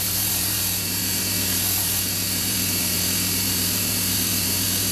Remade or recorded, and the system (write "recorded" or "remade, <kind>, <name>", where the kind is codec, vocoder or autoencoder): remade, vocoder, BigVGAN v2